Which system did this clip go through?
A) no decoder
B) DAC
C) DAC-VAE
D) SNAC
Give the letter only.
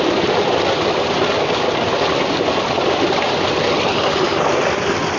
A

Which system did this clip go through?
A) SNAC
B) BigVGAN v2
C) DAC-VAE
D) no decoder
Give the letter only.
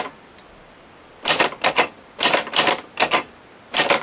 B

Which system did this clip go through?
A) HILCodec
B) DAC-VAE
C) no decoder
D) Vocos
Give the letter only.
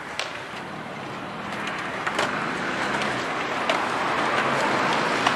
C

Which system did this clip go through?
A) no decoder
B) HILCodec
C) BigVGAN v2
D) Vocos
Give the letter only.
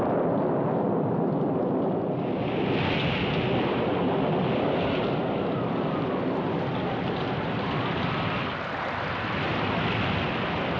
A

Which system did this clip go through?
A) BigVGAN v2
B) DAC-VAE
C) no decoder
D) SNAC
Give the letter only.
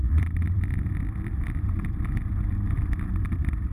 A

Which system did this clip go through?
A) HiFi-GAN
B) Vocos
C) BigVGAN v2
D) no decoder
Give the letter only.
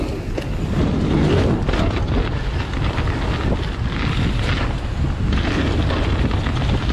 D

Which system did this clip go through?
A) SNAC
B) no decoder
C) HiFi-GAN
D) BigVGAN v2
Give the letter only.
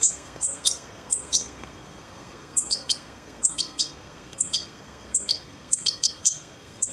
A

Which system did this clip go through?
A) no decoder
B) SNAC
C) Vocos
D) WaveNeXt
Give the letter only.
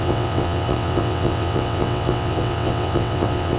D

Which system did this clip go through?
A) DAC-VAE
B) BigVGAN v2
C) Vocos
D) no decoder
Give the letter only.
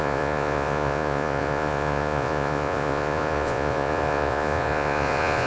C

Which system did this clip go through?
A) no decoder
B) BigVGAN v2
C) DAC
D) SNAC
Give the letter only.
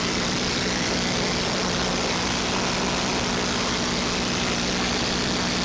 A